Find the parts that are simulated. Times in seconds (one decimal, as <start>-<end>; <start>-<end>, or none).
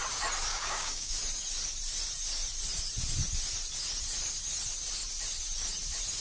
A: 0.5-1.1